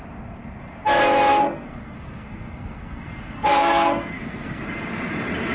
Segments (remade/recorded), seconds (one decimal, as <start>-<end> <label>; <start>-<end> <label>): 0.0-1.3 recorded; 1.3-4.6 remade; 4.6-5.5 recorded